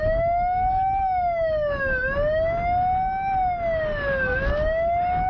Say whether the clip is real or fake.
real